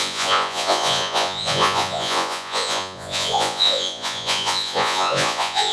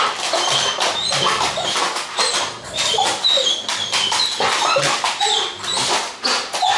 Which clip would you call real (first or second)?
second